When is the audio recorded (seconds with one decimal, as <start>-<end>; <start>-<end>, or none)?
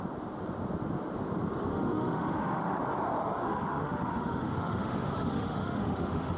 0.0-1.7; 2.8-3.4